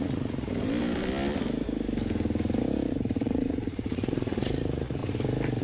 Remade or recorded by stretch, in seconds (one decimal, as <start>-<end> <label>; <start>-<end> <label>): 0.0-0.6 remade; 0.6-2.9 recorded; 2.9-5.0 remade; 5.0-5.6 recorded

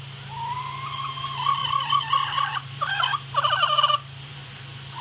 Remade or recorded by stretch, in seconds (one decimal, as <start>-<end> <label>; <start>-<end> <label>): 0.0-1.6 recorded; 1.6-4.6 remade; 4.6-5.0 recorded

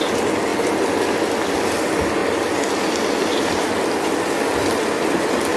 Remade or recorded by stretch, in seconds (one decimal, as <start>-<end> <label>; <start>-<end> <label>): 0.0-5.6 recorded